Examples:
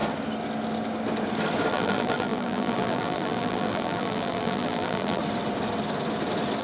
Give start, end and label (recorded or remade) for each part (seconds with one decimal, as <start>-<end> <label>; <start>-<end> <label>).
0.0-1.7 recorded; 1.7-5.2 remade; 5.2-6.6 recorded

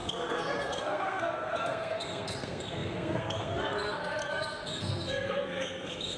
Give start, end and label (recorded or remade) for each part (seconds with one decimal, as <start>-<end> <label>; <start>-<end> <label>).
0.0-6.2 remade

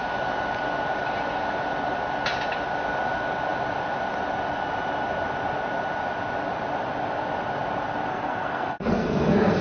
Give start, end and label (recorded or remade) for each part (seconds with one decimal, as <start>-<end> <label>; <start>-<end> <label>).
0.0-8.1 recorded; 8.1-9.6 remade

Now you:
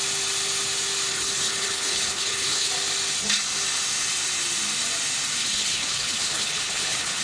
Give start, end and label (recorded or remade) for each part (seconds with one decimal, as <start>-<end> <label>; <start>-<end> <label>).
0.0-1.1 recorded; 1.1-2.7 remade; 2.7-5.4 recorded; 5.4-7.2 remade

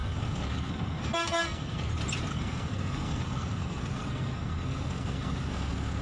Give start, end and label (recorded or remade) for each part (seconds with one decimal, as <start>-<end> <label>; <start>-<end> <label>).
0.0-1.9 remade; 1.9-2.3 recorded; 2.3-6.0 remade

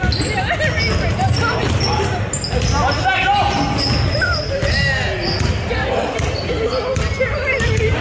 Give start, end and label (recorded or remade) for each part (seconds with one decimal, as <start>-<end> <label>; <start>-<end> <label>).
0.0-8.0 recorded